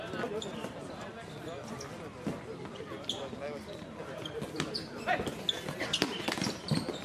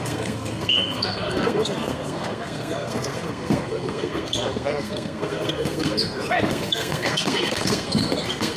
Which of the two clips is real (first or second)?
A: first